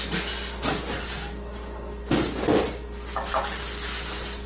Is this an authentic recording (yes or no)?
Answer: yes